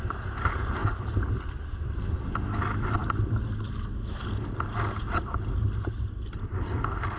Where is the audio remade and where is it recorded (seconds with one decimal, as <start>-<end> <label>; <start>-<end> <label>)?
0.0-7.2 recorded